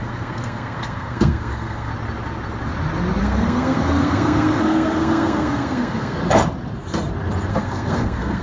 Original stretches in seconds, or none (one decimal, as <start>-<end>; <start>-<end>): 1.9-3.2; 6.2-7.5